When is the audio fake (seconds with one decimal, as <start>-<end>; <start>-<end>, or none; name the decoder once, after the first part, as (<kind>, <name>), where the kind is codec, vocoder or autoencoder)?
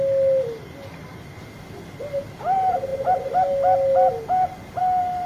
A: none